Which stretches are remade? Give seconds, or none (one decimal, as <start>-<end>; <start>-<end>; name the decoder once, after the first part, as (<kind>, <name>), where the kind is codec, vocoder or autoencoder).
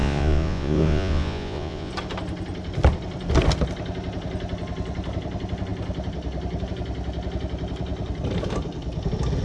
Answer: 0.0-1.9 (vocoder, Vocos)